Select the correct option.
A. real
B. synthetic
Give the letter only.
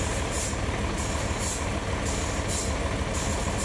A